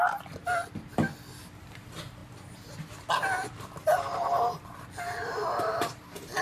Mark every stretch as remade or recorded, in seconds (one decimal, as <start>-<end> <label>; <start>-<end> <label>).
0.0-0.4 remade; 0.4-1.4 recorded; 1.4-2.2 remade; 2.2-5.6 recorded; 5.6-6.4 remade